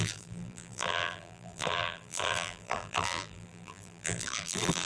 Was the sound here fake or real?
fake